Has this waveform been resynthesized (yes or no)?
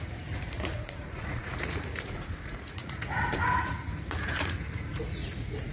yes